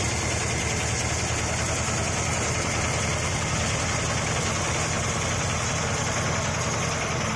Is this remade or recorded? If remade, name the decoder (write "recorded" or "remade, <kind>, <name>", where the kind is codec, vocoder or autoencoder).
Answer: recorded